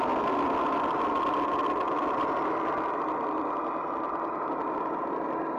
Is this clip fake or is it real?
real